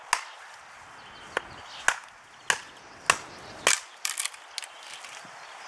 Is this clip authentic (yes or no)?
yes